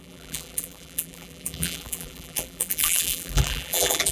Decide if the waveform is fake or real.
fake